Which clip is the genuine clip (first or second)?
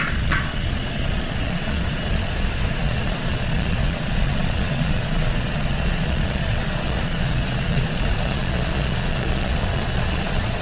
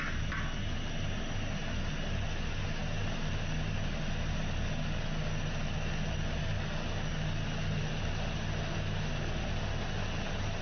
second